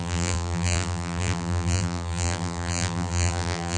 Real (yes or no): no